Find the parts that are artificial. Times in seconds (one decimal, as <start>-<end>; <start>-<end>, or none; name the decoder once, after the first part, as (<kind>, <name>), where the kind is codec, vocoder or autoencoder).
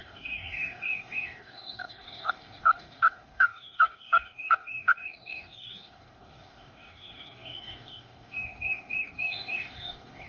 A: 0.0-10.3 (codec, DAC)